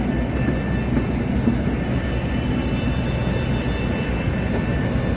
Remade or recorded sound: recorded